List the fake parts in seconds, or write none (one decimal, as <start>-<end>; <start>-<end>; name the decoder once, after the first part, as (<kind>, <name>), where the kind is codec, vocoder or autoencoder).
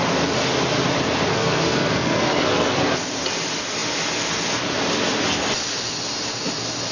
1.3-2.8 (codec, SNAC)